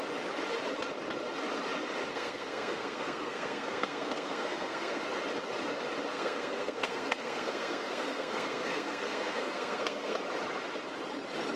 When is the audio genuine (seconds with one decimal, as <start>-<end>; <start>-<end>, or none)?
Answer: 0.0-2.1; 5.0-6.1; 10.2-11.6